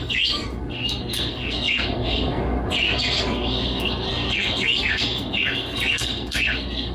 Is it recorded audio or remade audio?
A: remade